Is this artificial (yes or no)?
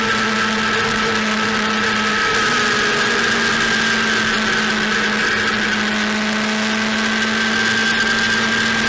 no